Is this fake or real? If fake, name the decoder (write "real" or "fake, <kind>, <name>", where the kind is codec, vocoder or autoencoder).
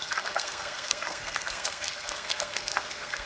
fake, codec, SNAC